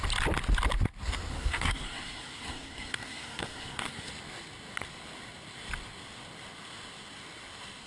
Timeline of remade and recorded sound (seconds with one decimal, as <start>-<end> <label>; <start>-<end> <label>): 0.0-1.3 recorded; 1.3-4.1 remade; 4.1-7.9 recorded